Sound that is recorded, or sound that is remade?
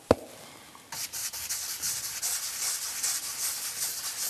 recorded